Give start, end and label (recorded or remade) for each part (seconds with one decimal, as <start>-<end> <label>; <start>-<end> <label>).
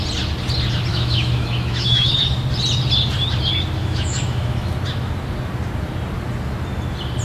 0.0-0.9 recorded; 0.9-2.2 remade; 2.2-3.8 recorded; 3.8-4.7 remade; 4.7-7.2 recorded